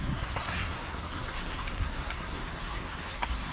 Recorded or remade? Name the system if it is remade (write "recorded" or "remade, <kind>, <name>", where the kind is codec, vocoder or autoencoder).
remade, codec, SNAC